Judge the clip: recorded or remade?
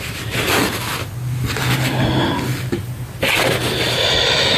recorded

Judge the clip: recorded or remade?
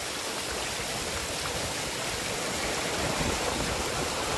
recorded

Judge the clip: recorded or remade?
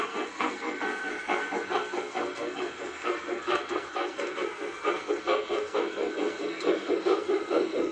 remade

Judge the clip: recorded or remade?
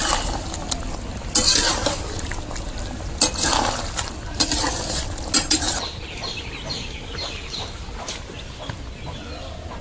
recorded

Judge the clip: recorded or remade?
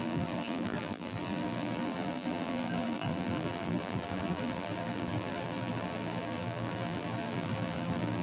remade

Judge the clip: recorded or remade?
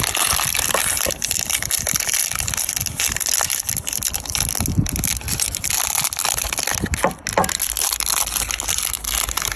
recorded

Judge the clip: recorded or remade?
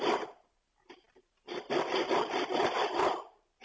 remade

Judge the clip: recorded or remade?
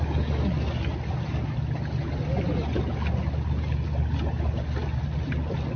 recorded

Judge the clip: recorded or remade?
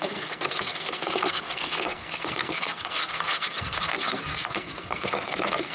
remade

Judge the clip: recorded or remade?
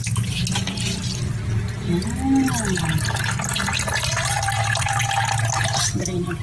recorded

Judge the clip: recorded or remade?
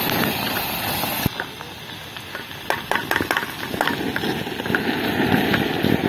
recorded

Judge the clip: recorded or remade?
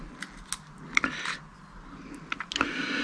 recorded